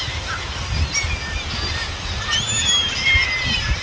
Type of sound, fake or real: real